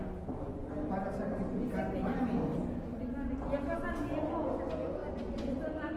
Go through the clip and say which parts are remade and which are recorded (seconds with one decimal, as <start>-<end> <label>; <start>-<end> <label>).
0.0-5.0 recorded; 5.0-6.0 remade